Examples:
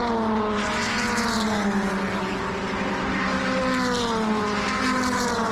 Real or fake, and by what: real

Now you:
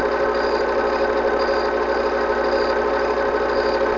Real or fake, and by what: real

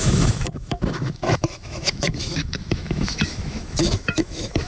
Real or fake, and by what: fake, autoencoder, DAC-VAE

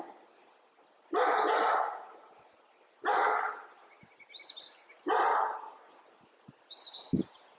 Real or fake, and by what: real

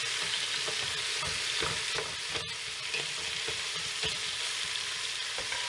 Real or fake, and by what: real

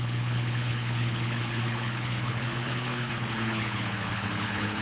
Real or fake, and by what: fake, codec, HILCodec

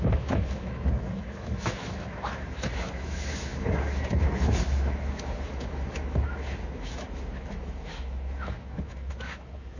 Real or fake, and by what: fake, autoencoder, DAC-VAE